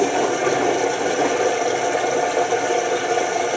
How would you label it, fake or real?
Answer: real